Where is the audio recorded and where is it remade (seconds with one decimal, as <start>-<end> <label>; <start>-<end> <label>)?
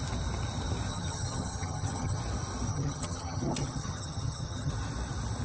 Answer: 0.0-0.9 recorded; 0.9-2.2 remade; 2.2-2.7 recorded; 2.7-4.7 remade; 4.7-5.4 recorded